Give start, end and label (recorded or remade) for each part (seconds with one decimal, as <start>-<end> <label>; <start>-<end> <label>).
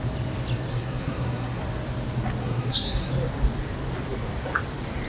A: 0.0-0.7 recorded; 0.7-1.6 remade; 1.6-2.4 recorded; 2.4-3.1 remade; 3.1-5.1 recorded